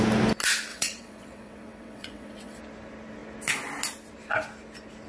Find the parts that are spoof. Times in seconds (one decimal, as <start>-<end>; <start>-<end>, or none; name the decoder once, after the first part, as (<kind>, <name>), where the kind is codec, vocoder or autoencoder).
0.7-2.6 (vocoder, WaveNeXt)